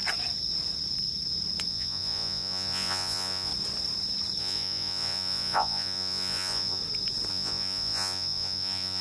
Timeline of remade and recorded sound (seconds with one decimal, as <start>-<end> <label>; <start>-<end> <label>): 0.0-1.7 recorded; 1.7-3.5 remade; 3.5-4.4 recorded; 4.4-6.8 remade; 6.8-7.3 recorded; 7.3-9.0 remade